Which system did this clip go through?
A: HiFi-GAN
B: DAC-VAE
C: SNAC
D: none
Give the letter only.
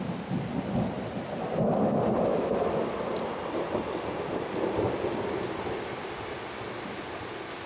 D